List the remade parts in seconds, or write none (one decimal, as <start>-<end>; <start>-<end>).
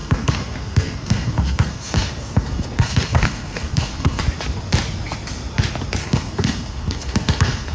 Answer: 0.0-4.2; 6.0-7.7